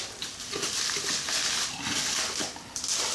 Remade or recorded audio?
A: recorded